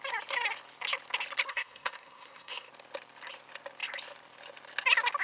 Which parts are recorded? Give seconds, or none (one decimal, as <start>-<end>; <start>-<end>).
0.0-1.5; 2.7-5.2